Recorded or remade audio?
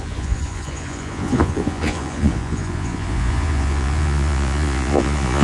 remade